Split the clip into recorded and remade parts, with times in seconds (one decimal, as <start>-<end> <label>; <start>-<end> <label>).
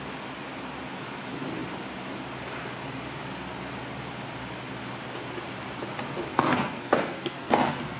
0.0-6.3 recorded; 6.3-8.0 remade